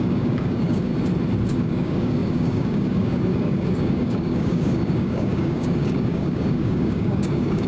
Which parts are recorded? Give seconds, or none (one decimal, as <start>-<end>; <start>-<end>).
0.9-1.6